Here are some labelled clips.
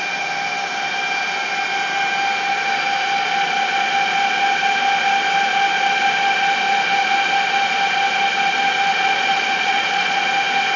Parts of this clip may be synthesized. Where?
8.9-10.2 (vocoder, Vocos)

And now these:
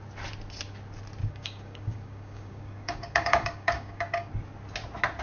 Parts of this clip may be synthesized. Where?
1.2-4.3 (codec, DAC)

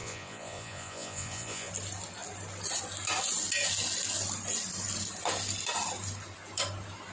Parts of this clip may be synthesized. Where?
0.0-1.7 (vocoder, Vocos)

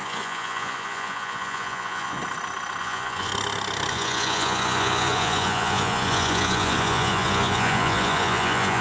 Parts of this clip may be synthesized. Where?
0.0-2.2 (vocoder, Vocos); 2.8-3.3; 3.9-8.8

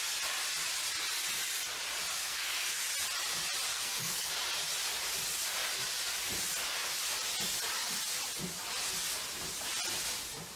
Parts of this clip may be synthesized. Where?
2.1-2.8 (codec, SNAC); 3.7-4.3

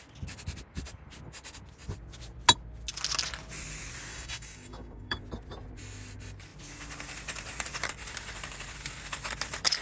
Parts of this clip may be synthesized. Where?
4.1-5.2 (codec, DAC)

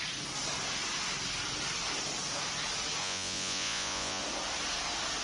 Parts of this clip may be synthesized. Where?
3.0-4.2 (vocoder, Vocos)

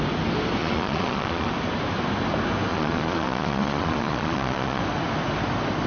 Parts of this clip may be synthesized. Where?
0.6-1.5 (vocoder, Vocos); 2.7-4.8